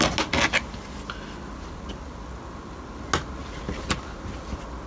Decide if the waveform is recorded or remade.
recorded